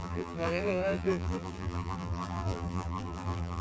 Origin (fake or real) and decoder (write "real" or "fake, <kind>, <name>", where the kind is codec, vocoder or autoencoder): fake, vocoder, BigVGAN v2